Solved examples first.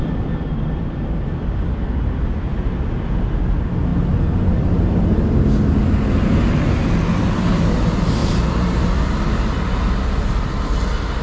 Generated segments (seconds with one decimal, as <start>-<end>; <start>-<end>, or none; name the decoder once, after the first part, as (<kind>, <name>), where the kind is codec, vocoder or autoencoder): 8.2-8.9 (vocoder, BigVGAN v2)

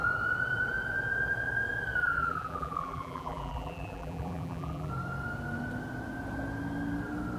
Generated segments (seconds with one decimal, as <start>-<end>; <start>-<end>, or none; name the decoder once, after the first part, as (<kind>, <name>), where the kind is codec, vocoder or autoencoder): 2.0-4.9 (vocoder, BigVGAN v2)

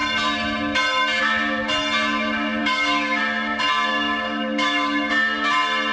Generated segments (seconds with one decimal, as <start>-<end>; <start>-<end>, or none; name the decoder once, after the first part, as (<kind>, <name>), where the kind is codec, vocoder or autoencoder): 2.6-3.2 (codec, DAC); 3.9-5.1

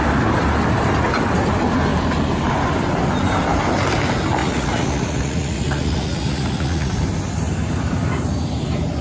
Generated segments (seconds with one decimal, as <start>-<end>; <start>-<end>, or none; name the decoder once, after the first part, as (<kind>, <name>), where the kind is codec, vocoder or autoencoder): 4.4-6.9 (vocoder, Vocos)